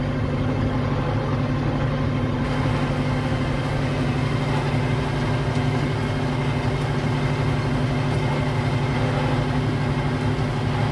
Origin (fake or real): real